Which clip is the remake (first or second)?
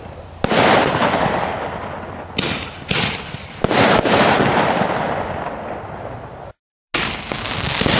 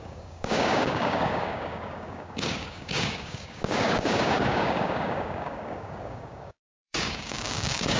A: second